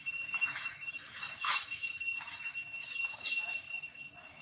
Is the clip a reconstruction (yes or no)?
yes